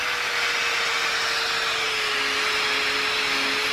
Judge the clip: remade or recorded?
recorded